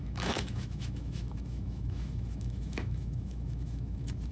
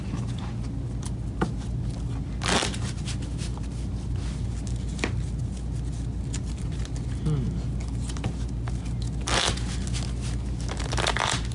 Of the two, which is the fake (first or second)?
first